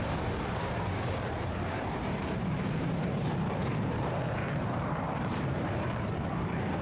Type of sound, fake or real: fake